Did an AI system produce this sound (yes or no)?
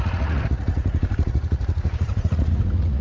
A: yes